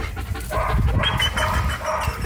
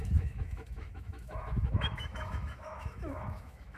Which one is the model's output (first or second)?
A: second